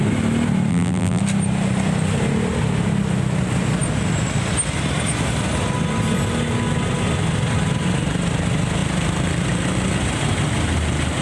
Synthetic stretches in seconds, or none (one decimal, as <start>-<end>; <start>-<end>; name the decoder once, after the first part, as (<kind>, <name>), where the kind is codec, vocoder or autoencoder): 0.7-1.2 (vocoder, BigVGAN v2)